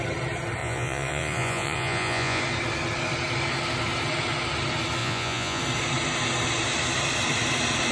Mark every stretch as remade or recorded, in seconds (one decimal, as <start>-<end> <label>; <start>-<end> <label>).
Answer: 0.0-0.6 recorded; 0.6-2.4 remade; 2.4-5.0 recorded; 5.0-5.6 remade; 5.6-7.9 recorded